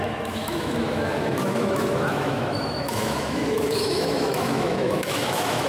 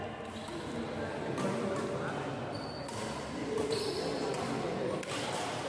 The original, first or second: second